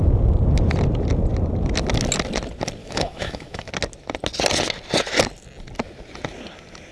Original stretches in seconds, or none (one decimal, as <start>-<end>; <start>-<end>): 0.0-2.8; 3.7-6.9